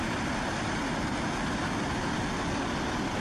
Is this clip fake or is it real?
real